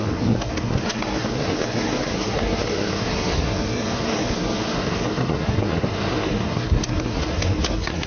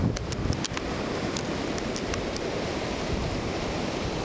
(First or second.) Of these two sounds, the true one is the second